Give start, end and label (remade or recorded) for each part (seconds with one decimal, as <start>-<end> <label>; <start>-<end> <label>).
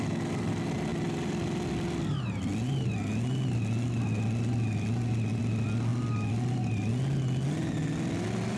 0.0-8.6 recorded